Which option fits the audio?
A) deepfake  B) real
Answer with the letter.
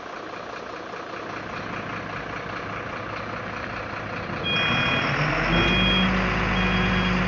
B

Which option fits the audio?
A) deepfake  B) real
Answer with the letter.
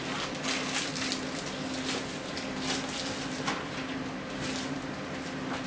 B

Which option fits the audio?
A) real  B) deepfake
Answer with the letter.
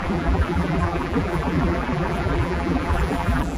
B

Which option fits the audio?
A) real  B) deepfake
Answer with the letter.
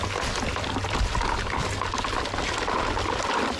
A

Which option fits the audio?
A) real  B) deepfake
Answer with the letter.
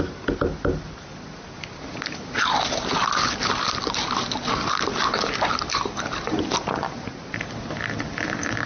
A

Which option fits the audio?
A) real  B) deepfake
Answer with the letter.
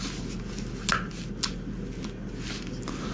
A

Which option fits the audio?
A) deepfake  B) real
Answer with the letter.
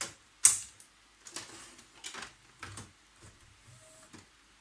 B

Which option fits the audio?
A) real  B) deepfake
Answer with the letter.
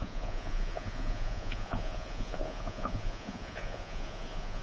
B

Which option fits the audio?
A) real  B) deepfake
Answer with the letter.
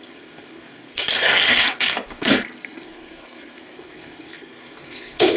B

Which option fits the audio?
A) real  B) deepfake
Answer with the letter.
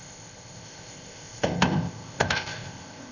B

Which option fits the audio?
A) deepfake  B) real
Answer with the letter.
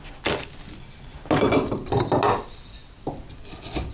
B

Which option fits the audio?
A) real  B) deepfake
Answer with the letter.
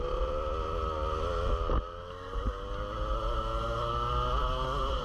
A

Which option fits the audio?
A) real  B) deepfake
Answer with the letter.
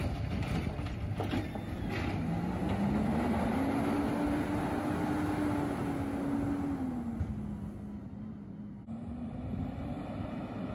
A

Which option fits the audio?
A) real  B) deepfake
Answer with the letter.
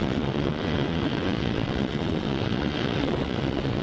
B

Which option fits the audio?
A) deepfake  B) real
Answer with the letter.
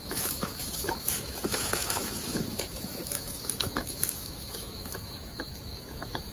A